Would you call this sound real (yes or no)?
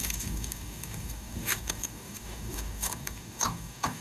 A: no